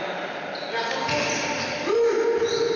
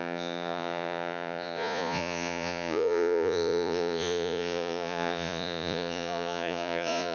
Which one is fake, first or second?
second